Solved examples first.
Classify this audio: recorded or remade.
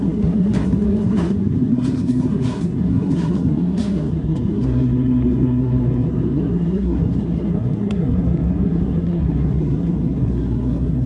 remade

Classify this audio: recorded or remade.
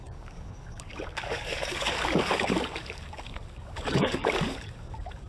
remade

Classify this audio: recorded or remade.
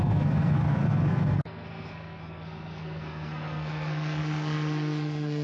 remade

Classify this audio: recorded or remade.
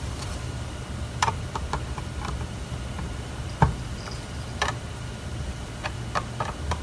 recorded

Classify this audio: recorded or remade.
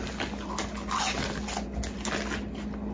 recorded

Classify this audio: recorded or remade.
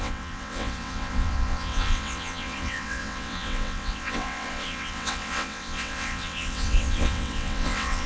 remade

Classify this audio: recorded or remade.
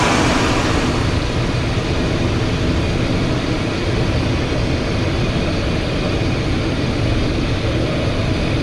recorded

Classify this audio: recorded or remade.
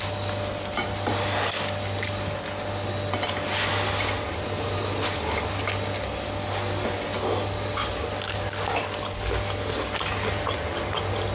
recorded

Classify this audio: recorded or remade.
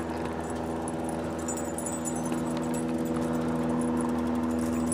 recorded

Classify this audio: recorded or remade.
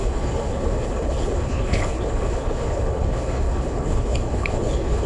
remade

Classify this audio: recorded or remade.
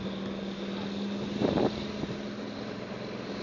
recorded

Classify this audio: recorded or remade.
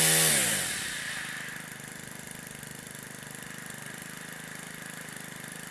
recorded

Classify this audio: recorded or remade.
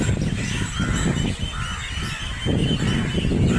recorded